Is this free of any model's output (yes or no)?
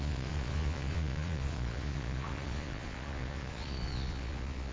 no